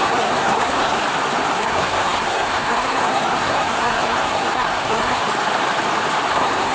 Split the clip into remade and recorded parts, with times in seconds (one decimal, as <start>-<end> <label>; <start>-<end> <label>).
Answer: 0.0-1.0 remade; 1.0-1.5 recorded; 1.5-5.2 remade; 5.2-6.3 recorded; 6.3-6.7 remade